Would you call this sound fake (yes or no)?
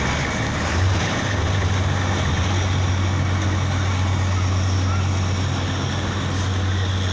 no